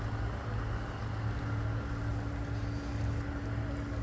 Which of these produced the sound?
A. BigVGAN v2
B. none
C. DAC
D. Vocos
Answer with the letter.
B